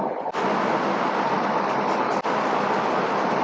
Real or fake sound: real